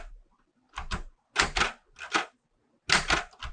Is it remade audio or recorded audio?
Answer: recorded